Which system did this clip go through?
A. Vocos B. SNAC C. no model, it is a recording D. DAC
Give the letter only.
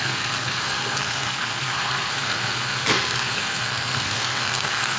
B